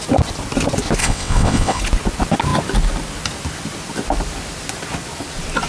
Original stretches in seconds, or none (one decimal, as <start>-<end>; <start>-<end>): 0.0-1.0; 1.8-5.7